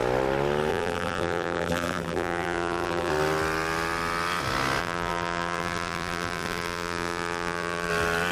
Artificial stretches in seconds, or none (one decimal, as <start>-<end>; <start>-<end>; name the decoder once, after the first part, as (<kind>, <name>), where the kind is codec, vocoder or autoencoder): 0.7-3.1 (vocoder, BigVGAN v2); 4.8-7.9